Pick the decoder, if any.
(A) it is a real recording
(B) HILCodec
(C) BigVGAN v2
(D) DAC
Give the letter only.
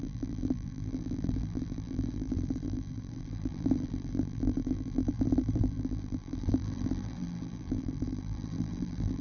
C